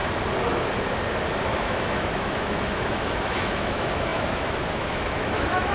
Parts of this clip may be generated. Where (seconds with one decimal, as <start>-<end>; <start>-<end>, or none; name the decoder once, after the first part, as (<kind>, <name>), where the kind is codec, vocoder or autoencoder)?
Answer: 1.4-5.7 (autoencoder, DAC-VAE)